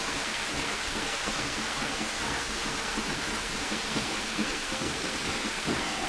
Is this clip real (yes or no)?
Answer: no